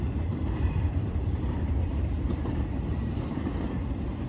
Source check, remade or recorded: remade